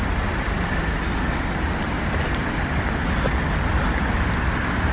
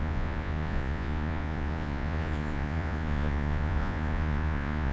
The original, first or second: first